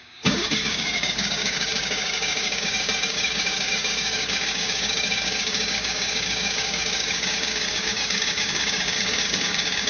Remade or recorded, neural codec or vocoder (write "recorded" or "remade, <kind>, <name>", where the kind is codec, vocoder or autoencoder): remade, codec, DAC